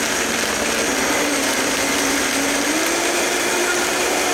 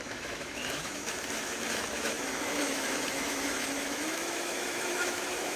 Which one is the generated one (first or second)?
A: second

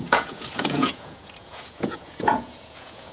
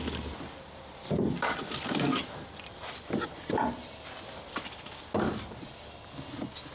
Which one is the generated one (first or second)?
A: first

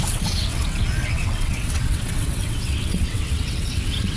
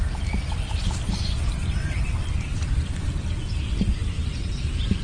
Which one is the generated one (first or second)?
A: first